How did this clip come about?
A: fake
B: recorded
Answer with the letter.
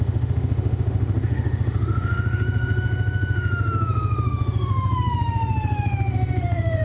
A